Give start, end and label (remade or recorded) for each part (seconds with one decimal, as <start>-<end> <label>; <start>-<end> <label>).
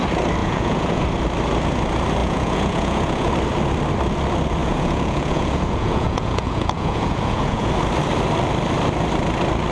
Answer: 0.0-0.4 recorded; 0.4-1.0 remade; 1.0-2.2 recorded; 2.2-3.3 remade; 3.3-4.6 recorded; 4.6-7.7 remade; 7.7-9.7 recorded